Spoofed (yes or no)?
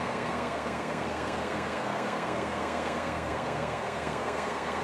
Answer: yes